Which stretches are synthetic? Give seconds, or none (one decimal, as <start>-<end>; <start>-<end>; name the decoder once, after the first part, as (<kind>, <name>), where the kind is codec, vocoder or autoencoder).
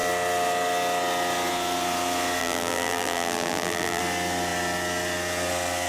2.4-4.0 (vocoder, BigVGAN v2)